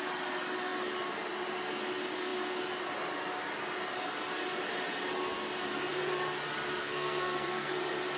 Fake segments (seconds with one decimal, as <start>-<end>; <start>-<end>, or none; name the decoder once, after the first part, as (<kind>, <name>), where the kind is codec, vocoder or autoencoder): 6.8-7.7 (codec, SNAC)